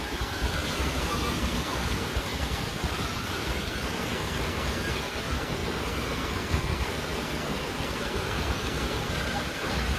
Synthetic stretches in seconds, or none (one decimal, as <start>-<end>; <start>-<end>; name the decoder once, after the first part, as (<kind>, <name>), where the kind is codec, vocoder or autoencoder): 0.0-10.0 (codec, SNAC)